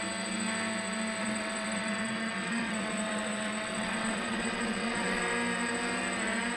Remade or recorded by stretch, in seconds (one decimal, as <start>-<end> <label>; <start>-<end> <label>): 0.0-1.2 recorded; 1.2-5.2 remade; 5.2-6.6 recorded